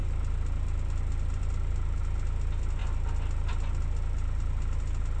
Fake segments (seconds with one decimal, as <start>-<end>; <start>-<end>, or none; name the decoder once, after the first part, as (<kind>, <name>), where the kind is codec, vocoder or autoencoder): none